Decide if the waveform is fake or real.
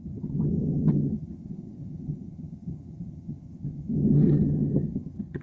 fake